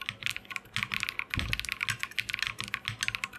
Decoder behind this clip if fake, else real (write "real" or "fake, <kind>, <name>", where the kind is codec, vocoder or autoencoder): real